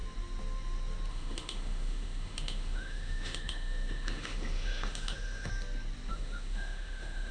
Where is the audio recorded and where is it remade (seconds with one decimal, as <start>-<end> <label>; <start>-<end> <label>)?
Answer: 0.0-1.1 recorded; 1.1-5.5 remade; 5.5-6.1 recorded; 6.1-7.3 remade

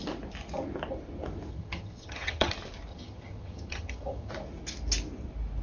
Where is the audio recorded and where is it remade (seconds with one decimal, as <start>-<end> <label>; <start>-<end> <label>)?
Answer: 0.0-1.5 recorded; 1.5-2.5 remade; 2.5-2.9 recorded; 2.9-4.3 remade; 4.3-5.6 recorded

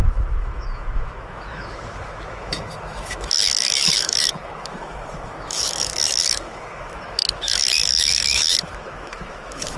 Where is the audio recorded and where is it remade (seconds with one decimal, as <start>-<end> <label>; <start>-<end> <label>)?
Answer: 0.0-9.8 remade

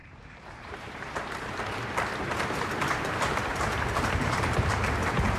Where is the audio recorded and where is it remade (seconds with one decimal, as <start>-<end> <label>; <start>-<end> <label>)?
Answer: 0.0-1.6 remade; 1.6-3.5 recorded; 3.5-4.4 remade; 4.4-5.4 recorded

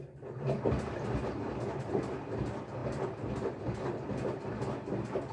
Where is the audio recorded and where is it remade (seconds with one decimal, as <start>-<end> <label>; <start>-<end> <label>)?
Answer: 0.0-5.3 recorded

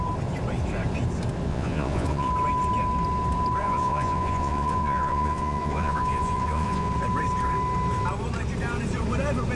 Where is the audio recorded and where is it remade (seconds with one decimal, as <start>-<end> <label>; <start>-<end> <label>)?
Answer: 0.0-1.5 recorded; 1.5-2.3 remade; 2.3-3.6 recorded; 3.6-6.9 remade; 6.9-9.6 recorded

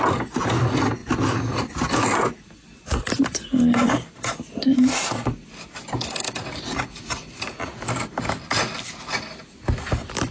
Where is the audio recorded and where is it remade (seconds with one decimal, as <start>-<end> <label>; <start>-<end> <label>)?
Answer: 0.0-10.3 recorded